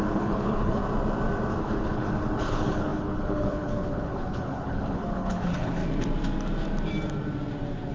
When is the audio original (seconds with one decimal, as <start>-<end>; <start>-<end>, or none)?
0.8-1.6; 5.8-7.9